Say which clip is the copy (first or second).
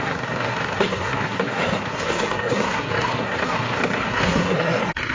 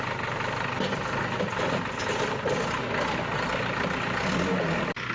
first